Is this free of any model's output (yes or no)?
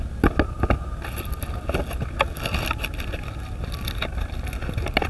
yes